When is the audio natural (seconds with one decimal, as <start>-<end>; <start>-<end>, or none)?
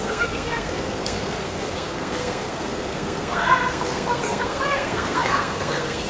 none